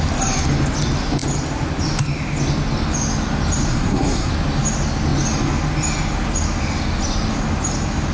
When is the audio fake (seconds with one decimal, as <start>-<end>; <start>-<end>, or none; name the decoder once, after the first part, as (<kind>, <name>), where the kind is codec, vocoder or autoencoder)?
3.7-4.3 (codec, SNAC)